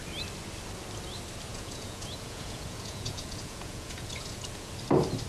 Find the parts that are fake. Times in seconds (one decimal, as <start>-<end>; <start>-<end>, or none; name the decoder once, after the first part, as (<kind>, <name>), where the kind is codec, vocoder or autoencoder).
1.5-4.7 (vocoder, Vocos)